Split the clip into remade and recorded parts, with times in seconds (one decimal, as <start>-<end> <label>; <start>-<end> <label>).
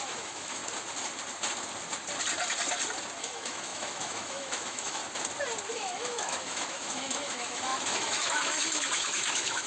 0.0-0.6 remade; 0.6-3.2 recorded; 3.2-5.0 remade; 5.0-5.7 recorded; 5.7-9.7 remade